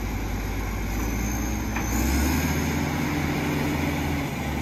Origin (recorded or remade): recorded